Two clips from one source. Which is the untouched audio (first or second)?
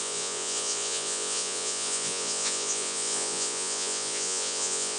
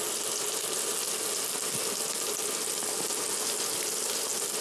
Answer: second